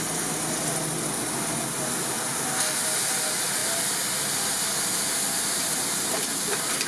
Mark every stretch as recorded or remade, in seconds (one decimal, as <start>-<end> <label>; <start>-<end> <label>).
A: 0.0-6.9 recorded

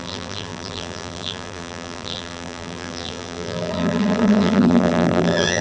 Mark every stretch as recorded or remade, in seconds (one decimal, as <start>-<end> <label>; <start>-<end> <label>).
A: 0.0-5.6 remade

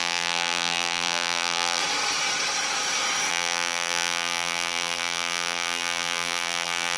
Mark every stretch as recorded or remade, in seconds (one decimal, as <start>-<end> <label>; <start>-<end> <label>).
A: 0.0-1.8 remade; 1.8-3.3 recorded; 3.3-7.0 remade

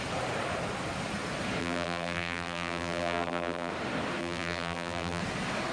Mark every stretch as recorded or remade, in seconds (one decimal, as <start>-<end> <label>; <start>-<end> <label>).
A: 0.0-1.6 recorded; 1.6-3.7 remade; 3.7-4.2 recorded; 4.2-5.2 remade; 5.2-5.7 recorded

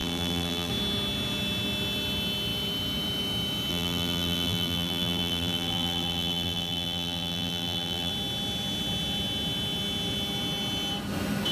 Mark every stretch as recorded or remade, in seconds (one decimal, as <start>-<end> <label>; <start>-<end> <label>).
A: 0.0-0.7 remade; 0.7-3.7 recorded; 3.7-8.1 remade; 8.1-11.5 recorded

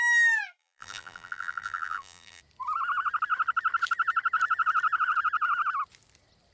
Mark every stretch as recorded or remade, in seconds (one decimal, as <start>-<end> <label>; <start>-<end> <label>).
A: 0.0-0.6 recorded; 0.6-2.4 remade; 2.4-6.5 recorded

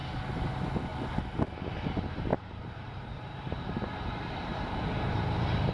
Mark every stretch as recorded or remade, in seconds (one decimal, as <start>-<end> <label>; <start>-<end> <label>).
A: 0.0-2.3 recorded; 2.3-5.7 remade